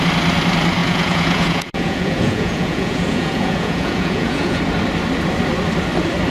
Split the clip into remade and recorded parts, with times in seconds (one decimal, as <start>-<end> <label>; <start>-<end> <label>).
0.0-0.8 recorded; 0.8-4.6 remade; 4.6-6.3 recorded